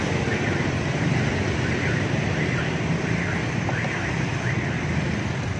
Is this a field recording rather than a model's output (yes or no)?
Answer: no